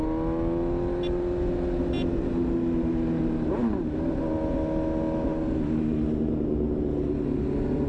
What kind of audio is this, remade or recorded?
recorded